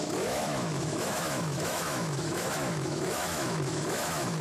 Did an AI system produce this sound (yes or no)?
yes